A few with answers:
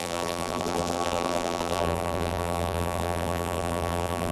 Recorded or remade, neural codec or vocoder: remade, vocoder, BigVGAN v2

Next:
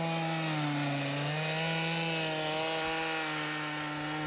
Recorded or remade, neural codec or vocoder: recorded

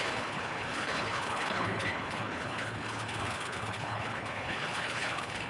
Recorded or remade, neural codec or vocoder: remade, codec, HILCodec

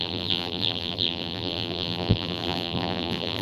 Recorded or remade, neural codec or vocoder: remade, vocoder, BigVGAN v2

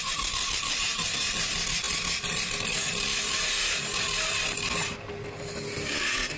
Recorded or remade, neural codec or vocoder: recorded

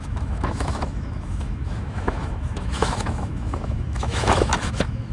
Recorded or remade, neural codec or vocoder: remade, autoencoder, DAC-VAE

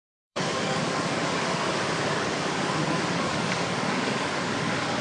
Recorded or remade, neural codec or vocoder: remade, codec, DAC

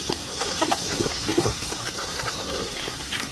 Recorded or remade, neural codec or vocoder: remade, codec, SNAC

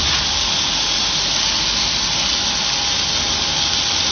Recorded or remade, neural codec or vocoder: recorded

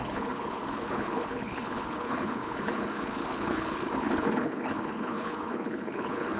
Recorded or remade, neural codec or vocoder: remade, codec, HILCodec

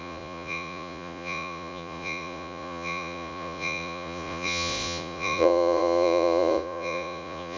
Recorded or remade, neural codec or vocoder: remade, vocoder, Vocos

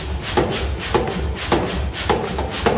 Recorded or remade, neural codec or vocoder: recorded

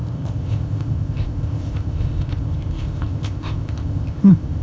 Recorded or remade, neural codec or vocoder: remade, codec, ZipCodec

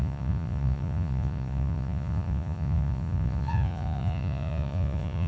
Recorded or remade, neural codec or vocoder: remade, vocoder, Vocos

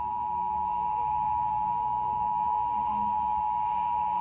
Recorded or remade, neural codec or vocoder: remade, codec, SNAC